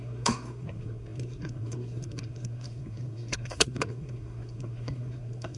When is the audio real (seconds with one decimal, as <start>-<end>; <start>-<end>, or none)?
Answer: none

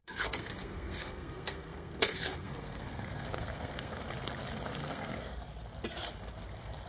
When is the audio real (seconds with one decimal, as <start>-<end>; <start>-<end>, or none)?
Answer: 4.0-4.8; 5.4-6.9

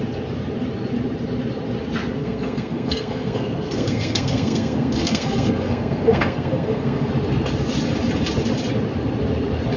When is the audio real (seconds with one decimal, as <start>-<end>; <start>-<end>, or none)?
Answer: 0.0-2.2; 7.1-9.8

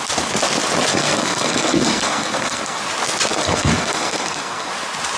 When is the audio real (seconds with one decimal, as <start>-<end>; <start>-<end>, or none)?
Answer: 0.0-0.9; 2.8-3.3; 4.7-5.2

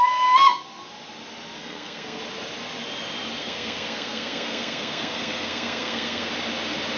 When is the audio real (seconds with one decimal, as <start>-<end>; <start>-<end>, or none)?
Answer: 0.0-1.6; 2.2-3.4; 6.3-7.0

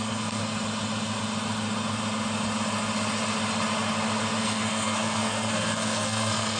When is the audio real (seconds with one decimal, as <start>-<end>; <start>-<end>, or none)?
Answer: 0.4-4.4

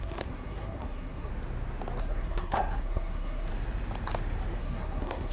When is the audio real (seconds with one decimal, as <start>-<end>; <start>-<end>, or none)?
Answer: 1.3-2.0; 3.5-4.6